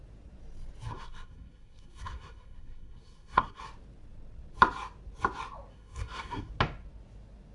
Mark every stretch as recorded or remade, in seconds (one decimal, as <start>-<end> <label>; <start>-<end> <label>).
0.0-0.9 recorded; 0.9-3.6 remade; 3.6-5.7 recorded; 5.7-6.5 remade; 6.5-7.5 recorded